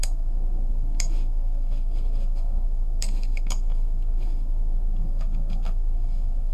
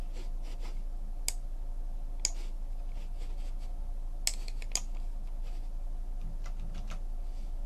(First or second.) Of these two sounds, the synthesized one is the first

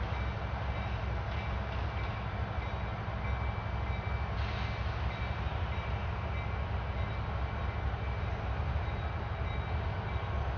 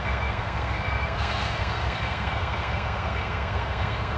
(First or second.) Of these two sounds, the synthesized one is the second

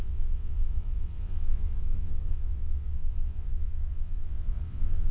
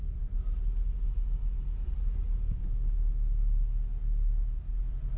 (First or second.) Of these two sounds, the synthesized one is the first